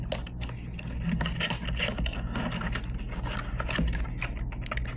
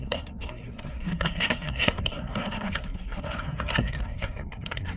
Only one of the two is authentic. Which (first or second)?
first